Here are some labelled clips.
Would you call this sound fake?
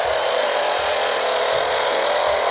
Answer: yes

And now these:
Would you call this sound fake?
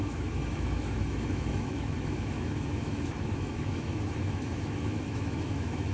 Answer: yes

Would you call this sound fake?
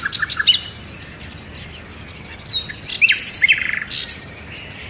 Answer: no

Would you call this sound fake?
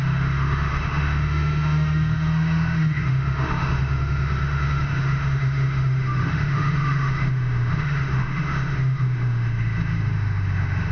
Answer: yes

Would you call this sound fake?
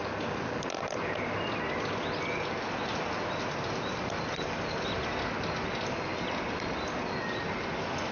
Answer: no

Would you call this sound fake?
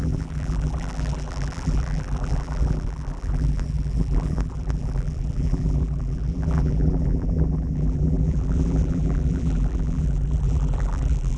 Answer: yes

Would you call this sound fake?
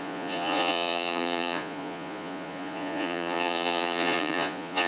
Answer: yes